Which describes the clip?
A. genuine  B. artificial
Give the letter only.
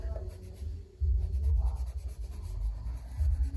A